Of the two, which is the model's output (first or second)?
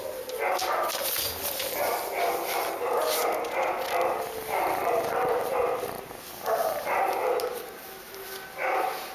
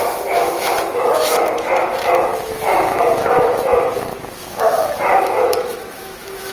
second